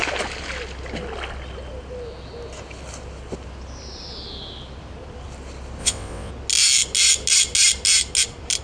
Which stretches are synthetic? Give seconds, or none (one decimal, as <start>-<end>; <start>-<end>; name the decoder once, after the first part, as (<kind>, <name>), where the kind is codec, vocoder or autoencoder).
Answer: 5.8-6.3 (vocoder, WaveNeXt)